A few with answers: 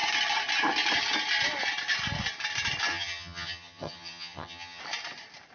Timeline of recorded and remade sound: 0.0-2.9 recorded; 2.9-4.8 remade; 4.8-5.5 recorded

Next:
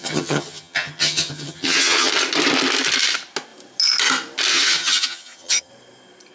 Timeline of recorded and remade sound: 0.0-2.1 remade; 2.1-4.5 recorded; 4.5-5.7 remade; 5.7-6.3 recorded

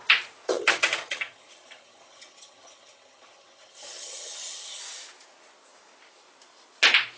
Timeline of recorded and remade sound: 0.0-0.5 recorded; 0.5-4.8 remade; 4.8-7.2 recorded

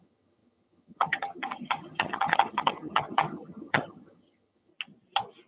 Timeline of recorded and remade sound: 0.0-4.7 remade; 4.7-5.5 recorded

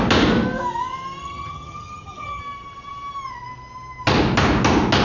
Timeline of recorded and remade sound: 0.0-1.2 recorded; 1.2-2.4 remade; 2.4-5.0 recorded

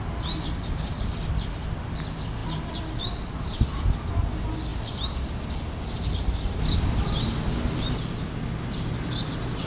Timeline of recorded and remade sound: 0.0-9.7 recorded

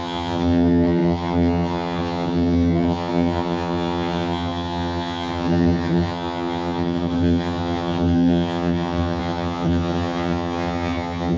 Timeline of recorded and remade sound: 0.0-11.4 remade

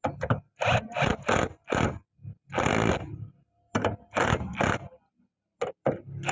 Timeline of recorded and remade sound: 0.0-6.3 recorded